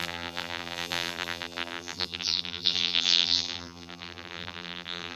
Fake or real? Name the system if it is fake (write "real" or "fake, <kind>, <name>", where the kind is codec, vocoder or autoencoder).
fake, vocoder, BigVGAN v2